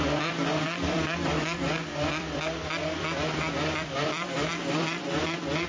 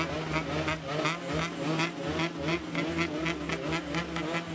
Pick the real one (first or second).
second